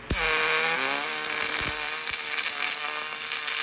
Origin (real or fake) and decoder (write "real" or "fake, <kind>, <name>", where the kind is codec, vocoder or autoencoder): real